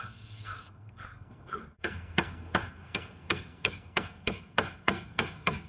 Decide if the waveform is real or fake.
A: fake